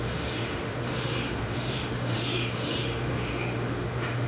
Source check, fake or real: fake